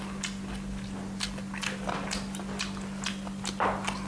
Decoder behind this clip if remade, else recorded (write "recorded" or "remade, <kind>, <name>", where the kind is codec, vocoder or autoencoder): recorded